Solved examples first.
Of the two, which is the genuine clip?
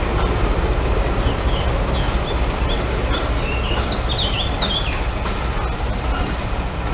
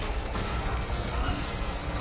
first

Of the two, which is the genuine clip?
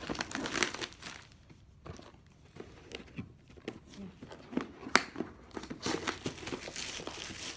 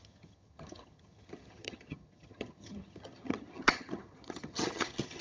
first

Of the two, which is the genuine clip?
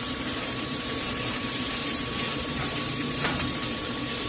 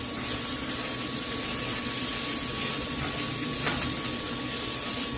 second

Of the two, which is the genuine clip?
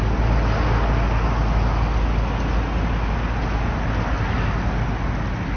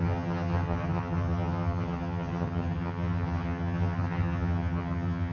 first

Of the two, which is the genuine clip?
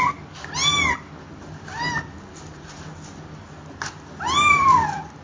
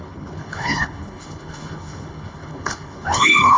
first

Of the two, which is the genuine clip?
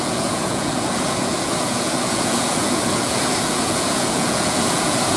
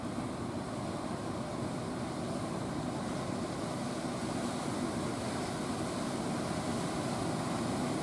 second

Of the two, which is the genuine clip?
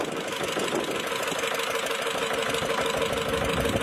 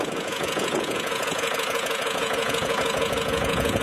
first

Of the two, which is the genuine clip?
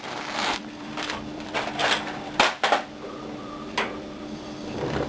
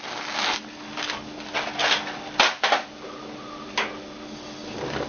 second